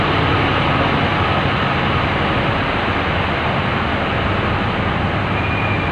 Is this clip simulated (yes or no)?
no